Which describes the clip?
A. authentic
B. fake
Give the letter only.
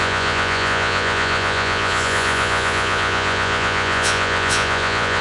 B